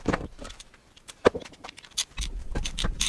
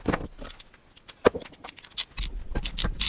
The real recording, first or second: second